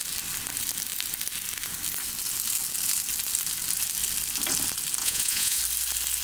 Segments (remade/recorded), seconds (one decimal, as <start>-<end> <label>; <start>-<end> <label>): 0.0-5.0 recorded; 5.0-5.6 remade; 5.6-6.2 recorded